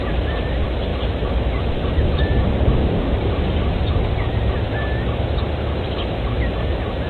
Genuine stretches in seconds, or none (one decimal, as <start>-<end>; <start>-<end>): 2.8-7.1